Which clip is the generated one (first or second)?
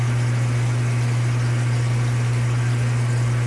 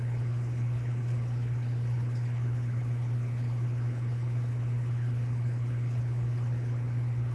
second